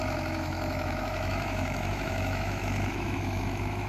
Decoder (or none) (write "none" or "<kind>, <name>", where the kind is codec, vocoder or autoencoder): autoencoder, DAC-VAE